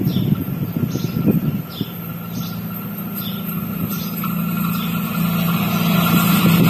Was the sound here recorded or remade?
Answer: recorded